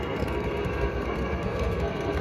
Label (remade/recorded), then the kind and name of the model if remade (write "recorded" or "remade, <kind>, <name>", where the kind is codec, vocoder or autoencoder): remade, codec, SNAC